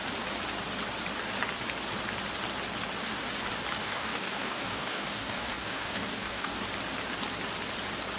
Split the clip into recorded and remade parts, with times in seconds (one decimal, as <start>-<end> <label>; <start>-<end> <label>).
0.0-3.8 recorded; 3.8-6.6 remade; 6.6-8.2 recorded